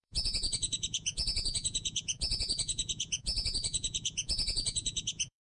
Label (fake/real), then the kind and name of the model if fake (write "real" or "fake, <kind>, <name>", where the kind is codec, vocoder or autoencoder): fake, vocoder, Vocos